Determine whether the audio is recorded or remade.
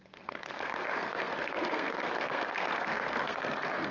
remade